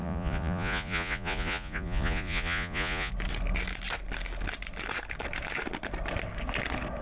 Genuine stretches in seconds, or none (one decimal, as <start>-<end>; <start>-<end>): 3.1-7.0